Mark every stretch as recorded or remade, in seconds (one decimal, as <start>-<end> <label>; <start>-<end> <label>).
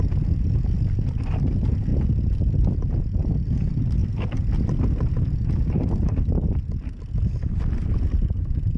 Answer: 0.0-8.8 recorded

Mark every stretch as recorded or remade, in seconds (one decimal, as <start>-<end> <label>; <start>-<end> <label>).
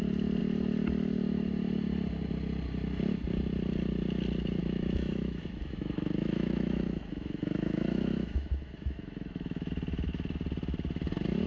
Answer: 0.0-4.6 recorded; 4.6-9.7 remade; 9.7-11.5 recorded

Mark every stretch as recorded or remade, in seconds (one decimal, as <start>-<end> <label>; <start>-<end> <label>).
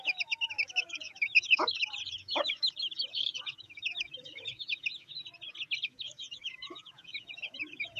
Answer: 0.0-5.1 remade; 5.1-5.8 recorded; 5.8-8.0 remade